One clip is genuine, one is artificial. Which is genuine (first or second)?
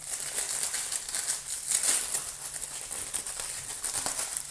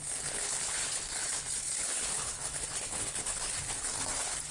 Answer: first